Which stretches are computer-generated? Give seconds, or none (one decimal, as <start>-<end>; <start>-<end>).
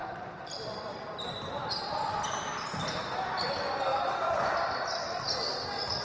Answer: 0.0-3.5; 3.9-4.5